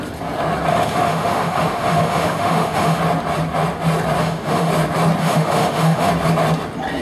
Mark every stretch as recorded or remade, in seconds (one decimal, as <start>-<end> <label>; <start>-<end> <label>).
0.0-0.7 recorded; 0.7-3.0 remade; 3.0-4.2 recorded; 4.2-4.7 remade; 4.7-5.2 recorded; 5.2-6.1 remade; 6.1-7.0 recorded